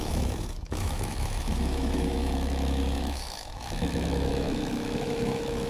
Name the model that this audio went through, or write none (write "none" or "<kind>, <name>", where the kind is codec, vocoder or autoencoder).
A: autoencoder, DAC-VAE